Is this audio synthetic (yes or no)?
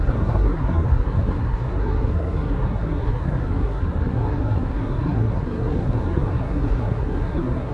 yes